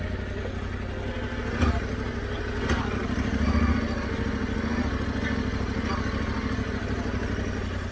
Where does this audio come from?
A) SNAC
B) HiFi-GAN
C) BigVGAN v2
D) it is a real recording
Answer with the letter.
D